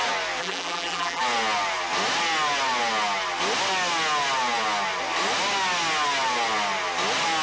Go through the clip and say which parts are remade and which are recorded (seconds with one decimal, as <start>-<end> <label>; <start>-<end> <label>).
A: 0.0-0.4 recorded; 0.4-1.2 remade; 1.2-7.4 recorded